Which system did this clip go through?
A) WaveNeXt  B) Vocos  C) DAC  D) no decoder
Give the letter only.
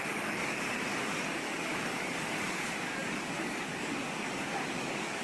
C